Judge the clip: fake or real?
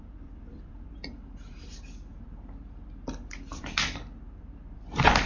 fake